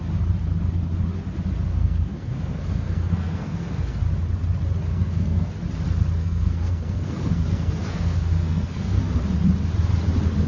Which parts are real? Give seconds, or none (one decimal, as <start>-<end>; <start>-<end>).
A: 0.0-1.7; 4.0-4.9; 5.5-6.2; 9.2-10.5